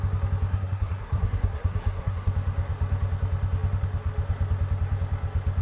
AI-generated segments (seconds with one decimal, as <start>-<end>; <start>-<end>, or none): 0.5-2.3